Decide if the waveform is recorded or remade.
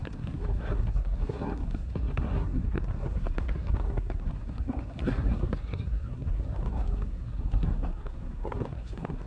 remade